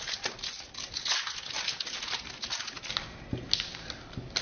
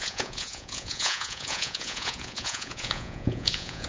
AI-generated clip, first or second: second